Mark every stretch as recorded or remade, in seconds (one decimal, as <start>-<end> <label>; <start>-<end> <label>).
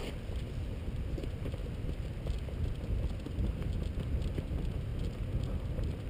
0.0-1.1 recorded; 1.1-1.6 remade; 1.6-4.4 recorded; 4.4-4.9 remade; 4.9-6.1 recorded